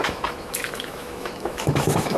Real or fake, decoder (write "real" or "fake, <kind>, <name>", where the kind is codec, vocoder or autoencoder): fake, autoencoder, DAC-VAE